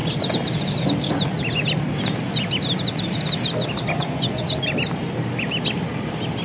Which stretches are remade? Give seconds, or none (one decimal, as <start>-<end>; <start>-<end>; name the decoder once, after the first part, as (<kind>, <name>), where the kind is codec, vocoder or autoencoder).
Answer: 4.0-4.5 (vocoder, Vocos)